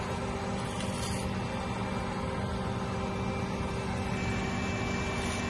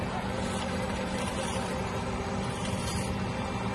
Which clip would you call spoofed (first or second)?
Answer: second